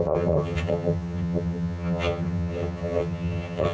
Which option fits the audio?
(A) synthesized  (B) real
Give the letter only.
A